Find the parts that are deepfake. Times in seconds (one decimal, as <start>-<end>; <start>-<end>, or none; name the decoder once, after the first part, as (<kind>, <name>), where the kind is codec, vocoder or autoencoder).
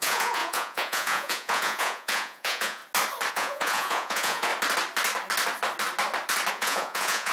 0.0-2.8 (vocoder, Vocos); 3.3-4.5; 6.5-7.3